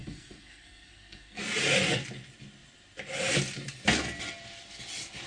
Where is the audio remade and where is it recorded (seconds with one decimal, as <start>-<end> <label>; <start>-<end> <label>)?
0.0-1.4 remade; 1.4-5.3 recorded